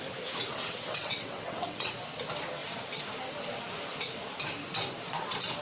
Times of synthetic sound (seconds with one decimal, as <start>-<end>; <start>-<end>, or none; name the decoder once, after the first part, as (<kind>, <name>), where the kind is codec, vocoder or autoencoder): 0.5-1.9 (vocoder, WaveNeXt)